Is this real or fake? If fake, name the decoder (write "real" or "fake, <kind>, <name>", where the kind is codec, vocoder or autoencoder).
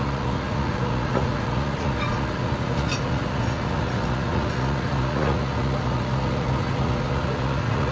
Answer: fake, vocoder, Vocos